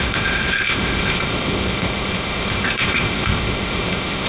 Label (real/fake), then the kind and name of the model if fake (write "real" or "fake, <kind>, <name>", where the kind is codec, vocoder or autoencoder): fake, codec, ZipCodec